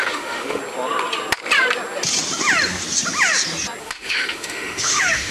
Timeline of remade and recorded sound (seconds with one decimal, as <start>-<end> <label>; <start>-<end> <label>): 0.0-0.6 remade; 0.6-3.8 recorded; 3.8-5.3 remade